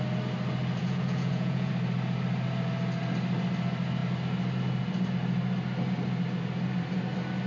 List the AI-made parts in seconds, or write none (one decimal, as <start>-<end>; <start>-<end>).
0.8-1.7